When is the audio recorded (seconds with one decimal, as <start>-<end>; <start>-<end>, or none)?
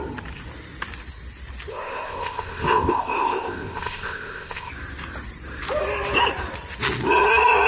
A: 0.0-1.7; 4.7-7.7